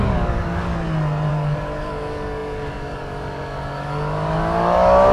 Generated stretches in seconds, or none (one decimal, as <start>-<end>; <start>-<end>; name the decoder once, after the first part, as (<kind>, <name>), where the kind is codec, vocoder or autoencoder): 0.0-0.7 (codec, DAC); 1.3-5.1